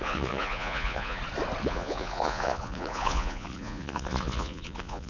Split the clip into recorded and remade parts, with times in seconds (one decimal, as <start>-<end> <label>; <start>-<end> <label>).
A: 0.0-1.2 remade; 1.2-1.6 recorded; 1.6-5.1 remade